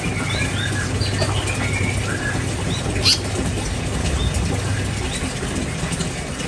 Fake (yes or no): no